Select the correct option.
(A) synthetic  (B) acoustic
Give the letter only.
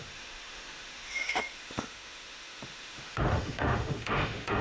A